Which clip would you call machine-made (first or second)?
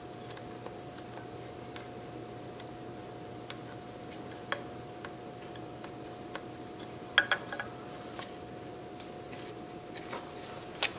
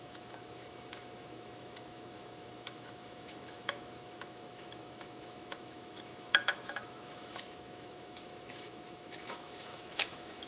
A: second